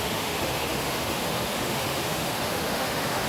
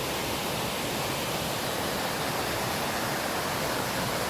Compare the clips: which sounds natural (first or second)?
second